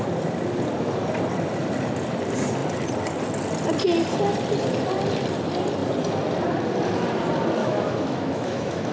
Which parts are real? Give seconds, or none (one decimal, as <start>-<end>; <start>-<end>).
0.0-7.6